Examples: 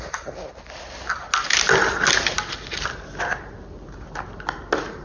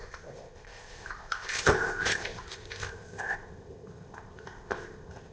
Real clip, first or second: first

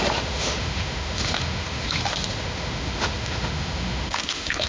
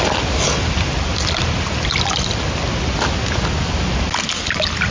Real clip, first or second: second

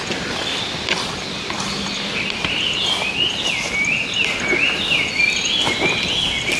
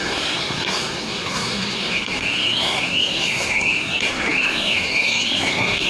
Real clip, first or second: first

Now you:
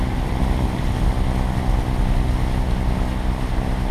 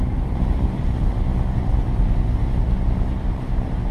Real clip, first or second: first